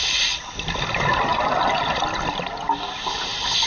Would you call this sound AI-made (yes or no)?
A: no